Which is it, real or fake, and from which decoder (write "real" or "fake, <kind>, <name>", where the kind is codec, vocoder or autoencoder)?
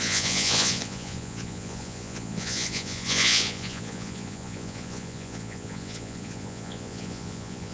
fake, vocoder, Vocos